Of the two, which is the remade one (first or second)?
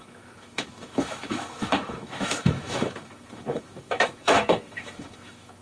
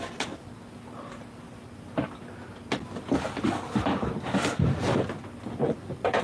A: first